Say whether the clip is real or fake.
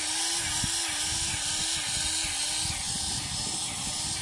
real